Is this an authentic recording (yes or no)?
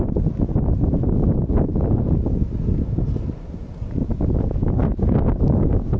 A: yes